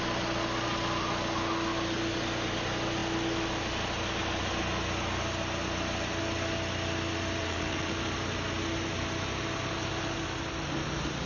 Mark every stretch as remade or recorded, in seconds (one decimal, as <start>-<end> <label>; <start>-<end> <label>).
0.0-7.4 recorded; 7.4-7.9 remade; 7.9-11.3 recorded

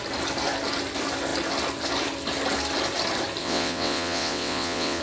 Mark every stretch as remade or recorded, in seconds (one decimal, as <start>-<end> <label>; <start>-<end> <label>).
0.0-3.4 recorded; 3.4-5.0 remade

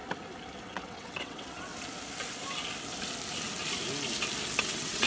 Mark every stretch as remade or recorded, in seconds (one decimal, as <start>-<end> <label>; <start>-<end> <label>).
0.0-0.6 recorded; 0.6-1.7 remade; 1.7-4.6 recorded; 4.6-5.1 remade

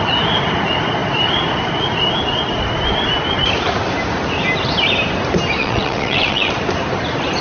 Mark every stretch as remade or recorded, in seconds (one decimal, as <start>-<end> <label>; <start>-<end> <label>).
0.0-5.6 recorded; 5.6-6.5 remade; 6.5-7.4 recorded

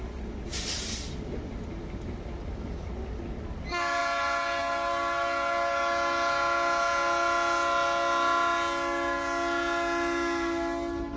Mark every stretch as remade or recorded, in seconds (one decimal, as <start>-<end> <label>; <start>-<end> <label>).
0.0-11.2 recorded

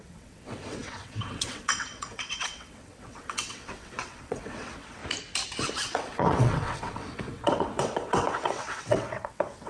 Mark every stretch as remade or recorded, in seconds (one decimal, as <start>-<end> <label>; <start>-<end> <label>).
0.0-5.0 remade; 5.0-5.7 recorded; 5.7-9.7 remade

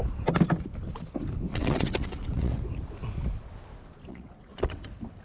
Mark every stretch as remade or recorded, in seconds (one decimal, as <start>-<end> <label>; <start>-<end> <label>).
0.0-1.5 recorded; 1.5-2.6 remade; 2.6-4.1 recorded; 4.1-4.8 remade; 4.8-5.2 recorded